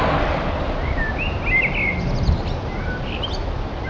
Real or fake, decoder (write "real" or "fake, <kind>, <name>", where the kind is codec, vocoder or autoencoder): real